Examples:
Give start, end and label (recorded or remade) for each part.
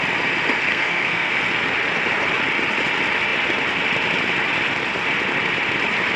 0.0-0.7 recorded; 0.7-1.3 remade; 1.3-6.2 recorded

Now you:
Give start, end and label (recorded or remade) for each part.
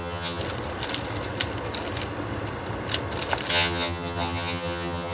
0.0-0.4 remade; 0.4-3.5 recorded; 3.5-5.1 remade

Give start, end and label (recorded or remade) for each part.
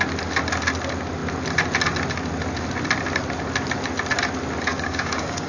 0.0-4.7 recorded; 4.7-5.5 remade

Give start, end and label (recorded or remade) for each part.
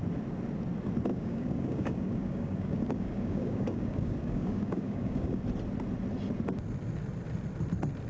0.0-1.1 recorded; 1.1-5.4 remade; 5.4-8.1 recorded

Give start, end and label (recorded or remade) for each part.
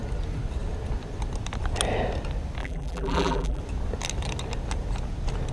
0.0-2.6 recorded; 2.6-3.6 remade; 3.6-5.5 recorded